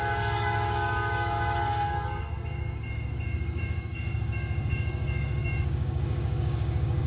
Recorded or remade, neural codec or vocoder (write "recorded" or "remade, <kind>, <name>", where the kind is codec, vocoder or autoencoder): remade, codec, DAC